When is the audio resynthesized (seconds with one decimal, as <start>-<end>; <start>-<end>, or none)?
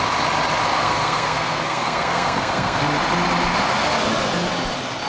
0.7-2.8